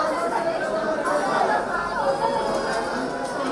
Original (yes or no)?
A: yes